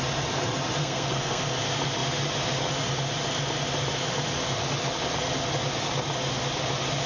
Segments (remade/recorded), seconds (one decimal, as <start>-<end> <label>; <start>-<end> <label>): 0.0-0.8 recorded; 0.8-1.4 remade; 1.4-7.1 recorded